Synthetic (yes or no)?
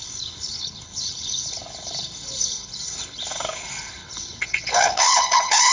yes